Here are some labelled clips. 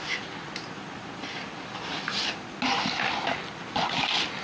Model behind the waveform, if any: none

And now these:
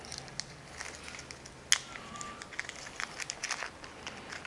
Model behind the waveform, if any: none